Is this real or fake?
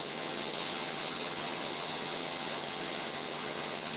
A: fake